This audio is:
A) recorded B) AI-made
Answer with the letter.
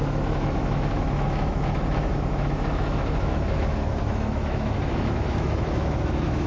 B